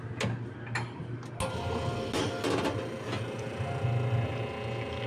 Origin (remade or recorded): recorded